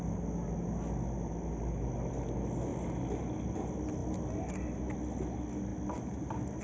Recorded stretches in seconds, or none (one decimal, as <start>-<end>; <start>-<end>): 0.0-6.6